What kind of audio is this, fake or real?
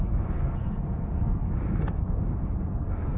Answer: real